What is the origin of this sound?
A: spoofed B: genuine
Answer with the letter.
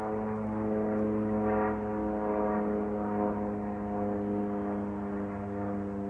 B